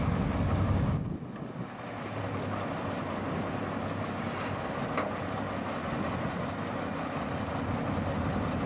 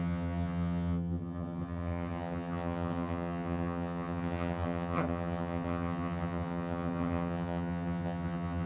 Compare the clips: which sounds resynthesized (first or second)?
second